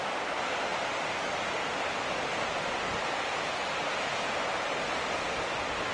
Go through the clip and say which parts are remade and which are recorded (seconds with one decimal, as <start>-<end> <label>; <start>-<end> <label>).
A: 0.0-5.9 recorded